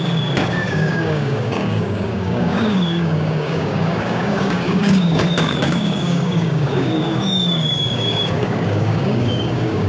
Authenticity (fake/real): fake